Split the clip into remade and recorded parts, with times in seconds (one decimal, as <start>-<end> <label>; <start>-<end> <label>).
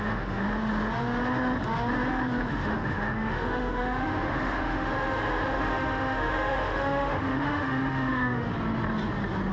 0.0-0.4 remade; 0.4-2.5 recorded; 2.5-8.5 remade; 8.5-9.5 recorded